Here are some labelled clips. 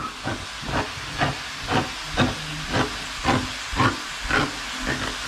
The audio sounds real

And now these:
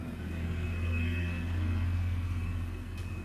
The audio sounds fake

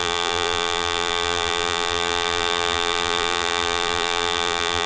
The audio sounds fake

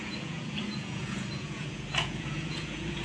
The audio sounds fake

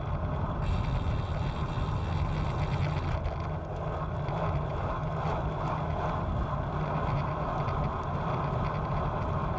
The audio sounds real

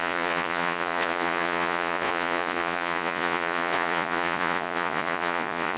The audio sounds fake